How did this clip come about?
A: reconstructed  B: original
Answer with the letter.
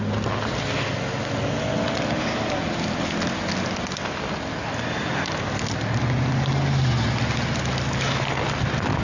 B